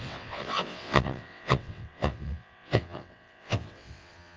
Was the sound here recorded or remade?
remade